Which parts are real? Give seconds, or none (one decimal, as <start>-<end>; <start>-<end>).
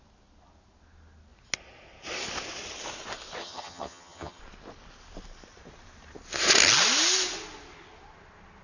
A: 0.0-3.4; 4.4-8.6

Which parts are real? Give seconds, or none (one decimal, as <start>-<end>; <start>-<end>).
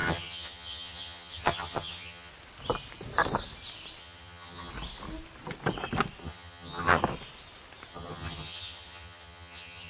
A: 2.3-4.0; 4.7-6.2; 7.0-7.9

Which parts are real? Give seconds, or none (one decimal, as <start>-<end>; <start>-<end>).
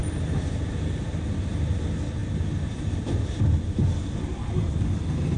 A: 1.5-2.2; 3.3-5.4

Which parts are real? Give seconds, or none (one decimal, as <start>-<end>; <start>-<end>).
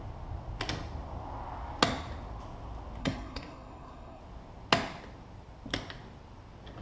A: 0.0-3.0; 4.2-6.8